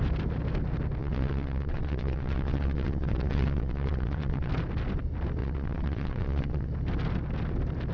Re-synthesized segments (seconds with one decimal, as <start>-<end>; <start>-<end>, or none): 1.0-4.5; 5.4-6.7